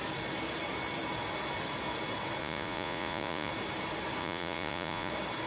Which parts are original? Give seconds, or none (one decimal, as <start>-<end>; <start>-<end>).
0.0-2.4; 3.5-4.2; 5.1-5.5